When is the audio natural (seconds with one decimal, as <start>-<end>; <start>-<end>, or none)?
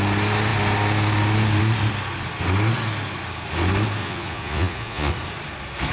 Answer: 0.0-4.0; 5.1-5.9